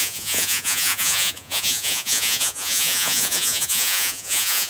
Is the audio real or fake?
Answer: fake